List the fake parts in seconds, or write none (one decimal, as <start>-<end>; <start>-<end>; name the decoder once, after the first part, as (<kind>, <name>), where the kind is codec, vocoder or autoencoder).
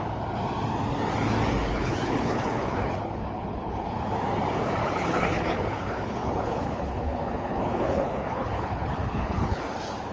1.7-4.1 (codec, HILCodec); 4.8-9.6